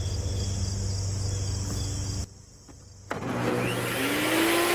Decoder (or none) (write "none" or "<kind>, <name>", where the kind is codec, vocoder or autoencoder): none